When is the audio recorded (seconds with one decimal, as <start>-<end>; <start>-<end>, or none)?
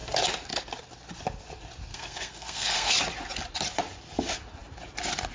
0.0-1.9; 2.9-5.3